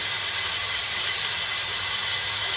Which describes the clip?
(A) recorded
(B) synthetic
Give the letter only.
A